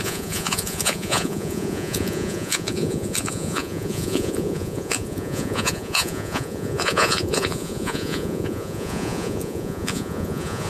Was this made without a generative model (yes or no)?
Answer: no